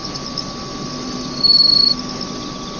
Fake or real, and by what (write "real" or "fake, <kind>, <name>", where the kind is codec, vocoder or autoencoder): real